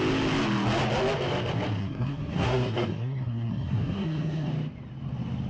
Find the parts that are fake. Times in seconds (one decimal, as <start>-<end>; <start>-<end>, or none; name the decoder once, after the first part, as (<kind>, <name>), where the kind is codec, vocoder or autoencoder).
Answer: 1.8-4.5 (codec, SNAC)